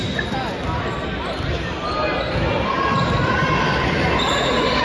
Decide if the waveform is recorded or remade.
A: recorded